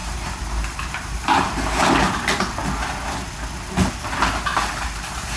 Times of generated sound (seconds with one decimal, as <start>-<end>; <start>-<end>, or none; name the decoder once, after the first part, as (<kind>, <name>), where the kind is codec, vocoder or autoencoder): 0.0-1.8 (vocoder, BigVGAN v2); 4.5-5.4